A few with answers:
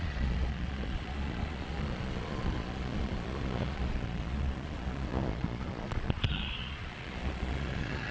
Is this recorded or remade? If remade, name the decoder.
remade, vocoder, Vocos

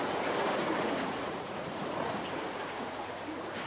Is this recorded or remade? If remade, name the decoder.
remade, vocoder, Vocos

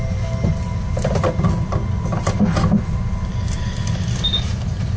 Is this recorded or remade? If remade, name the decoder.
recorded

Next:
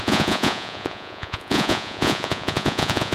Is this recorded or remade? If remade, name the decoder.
remade, vocoder, Vocos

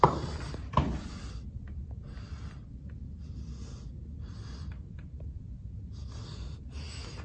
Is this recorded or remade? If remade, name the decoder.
recorded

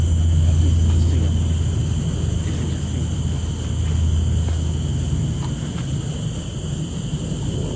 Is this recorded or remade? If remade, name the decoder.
recorded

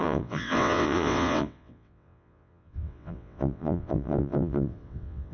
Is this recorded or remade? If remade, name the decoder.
remade, vocoder, WaveNeXt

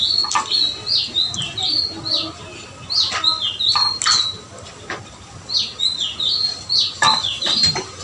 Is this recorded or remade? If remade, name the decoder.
recorded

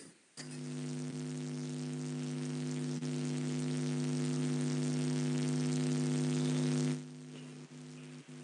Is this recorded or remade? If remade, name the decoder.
recorded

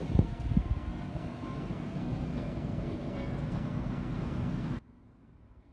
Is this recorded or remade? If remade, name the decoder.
remade, codec, SNAC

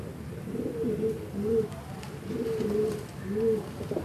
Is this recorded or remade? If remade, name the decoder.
remade, vocoder, BigVGAN v2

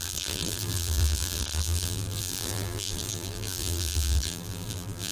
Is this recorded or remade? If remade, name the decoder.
remade, vocoder, BigVGAN v2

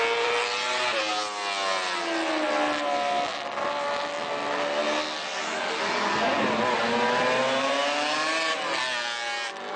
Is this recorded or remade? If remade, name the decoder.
recorded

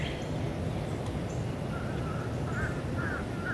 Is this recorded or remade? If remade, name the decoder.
recorded